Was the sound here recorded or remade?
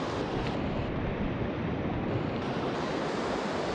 recorded